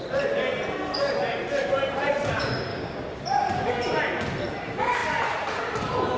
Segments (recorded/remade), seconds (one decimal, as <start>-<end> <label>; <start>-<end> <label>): 0.0-2.7 recorded; 2.7-3.2 remade; 3.2-6.2 recorded